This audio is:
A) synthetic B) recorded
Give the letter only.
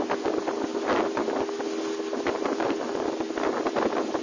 B